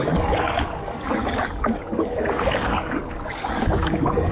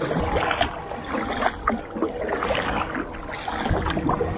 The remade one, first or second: first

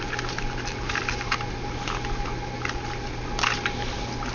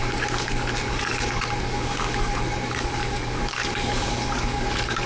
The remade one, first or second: second